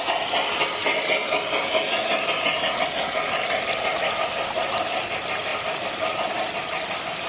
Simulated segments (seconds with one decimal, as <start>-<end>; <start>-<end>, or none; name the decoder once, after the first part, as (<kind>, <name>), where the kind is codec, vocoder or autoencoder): 5.5-7.3 (vocoder, BigVGAN v2)

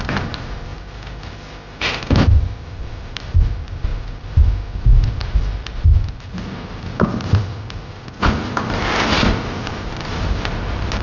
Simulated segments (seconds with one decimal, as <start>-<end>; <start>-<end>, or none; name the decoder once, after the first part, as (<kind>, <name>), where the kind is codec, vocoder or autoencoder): 0.0-0.7 (vocoder, BigVGAN v2); 2.3-3.9; 5.2-5.9; 9.1-11.0

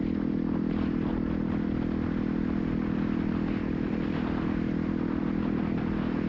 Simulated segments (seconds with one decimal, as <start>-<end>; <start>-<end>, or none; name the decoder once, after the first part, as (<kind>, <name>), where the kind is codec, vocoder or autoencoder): 3.6-5.2 (vocoder, BigVGAN v2)

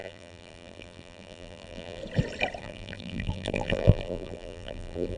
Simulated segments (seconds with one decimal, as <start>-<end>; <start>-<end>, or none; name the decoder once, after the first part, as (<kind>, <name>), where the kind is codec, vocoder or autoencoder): 0.0-2.0 (vocoder, BigVGAN v2); 2.6-5.2

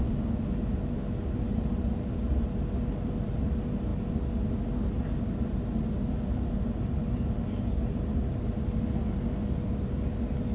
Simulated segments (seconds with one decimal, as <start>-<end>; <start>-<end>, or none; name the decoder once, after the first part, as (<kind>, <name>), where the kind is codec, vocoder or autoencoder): none